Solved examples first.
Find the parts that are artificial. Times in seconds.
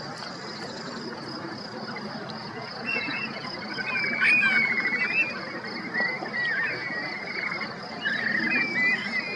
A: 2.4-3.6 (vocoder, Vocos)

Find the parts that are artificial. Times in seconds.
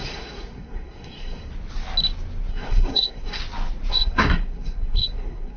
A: 0.0-1.5 (codec, SNAC); 2.5-3.4; 3.9-5.6